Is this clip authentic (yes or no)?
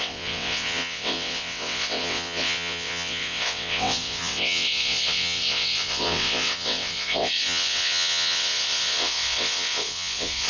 no